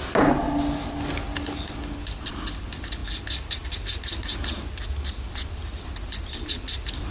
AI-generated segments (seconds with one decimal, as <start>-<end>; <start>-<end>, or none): none